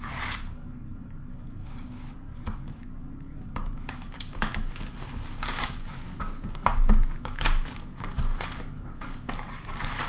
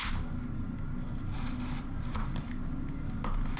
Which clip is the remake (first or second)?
first